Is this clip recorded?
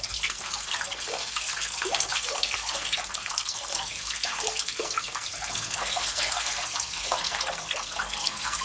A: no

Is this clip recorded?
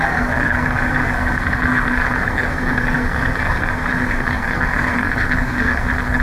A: no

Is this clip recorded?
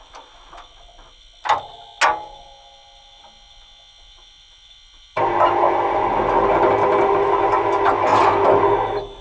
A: yes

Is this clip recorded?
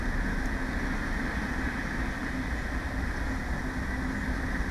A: yes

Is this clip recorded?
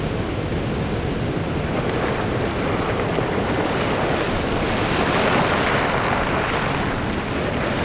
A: yes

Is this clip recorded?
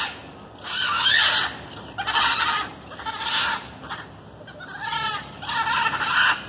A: yes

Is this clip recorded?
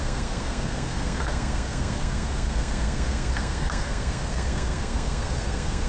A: no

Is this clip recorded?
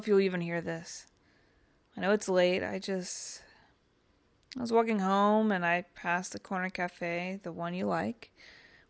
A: yes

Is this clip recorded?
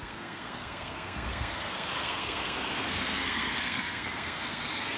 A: no